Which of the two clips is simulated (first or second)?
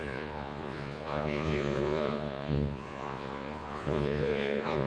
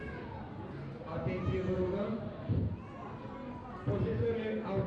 first